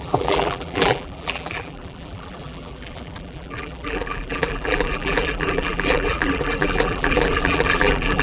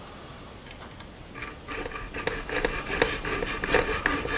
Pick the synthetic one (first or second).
first